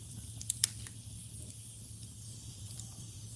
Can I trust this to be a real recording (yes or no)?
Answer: no